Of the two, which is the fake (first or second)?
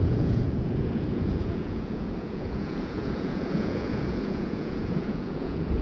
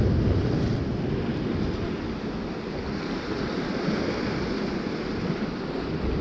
first